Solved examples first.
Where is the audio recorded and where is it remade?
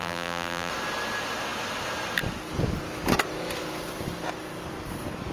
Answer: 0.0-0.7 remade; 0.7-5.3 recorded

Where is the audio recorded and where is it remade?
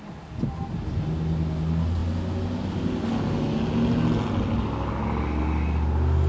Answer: 0.0-6.3 recorded